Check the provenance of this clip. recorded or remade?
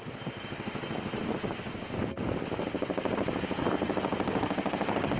recorded